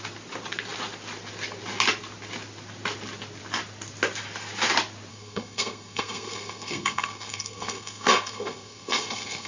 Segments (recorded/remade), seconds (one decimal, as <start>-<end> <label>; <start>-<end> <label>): 0.0-5.1 recorded; 5.1-9.5 remade